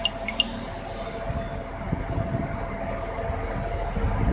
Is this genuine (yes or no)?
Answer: yes